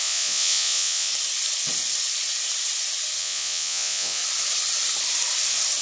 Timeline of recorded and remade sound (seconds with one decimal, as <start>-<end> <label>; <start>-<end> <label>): 0.0-1.1 remade; 1.1-3.2 recorded; 3.2-4.2 remade; 4.2-5.8 recorded